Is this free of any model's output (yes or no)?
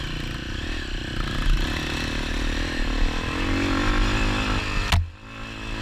yes